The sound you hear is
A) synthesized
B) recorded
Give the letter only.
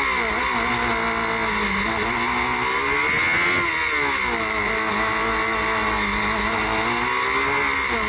B